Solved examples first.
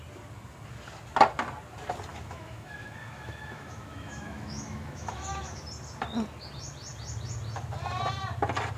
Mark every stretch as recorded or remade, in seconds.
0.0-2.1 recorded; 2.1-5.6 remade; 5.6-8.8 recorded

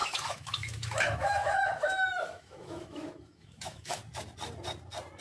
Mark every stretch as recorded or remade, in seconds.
0.0-4.0 remade; 4.0-5.2 recorded

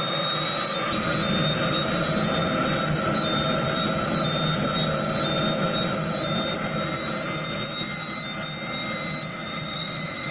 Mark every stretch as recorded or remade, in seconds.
0.0-9.3 recorded; 9.3-10.3 remade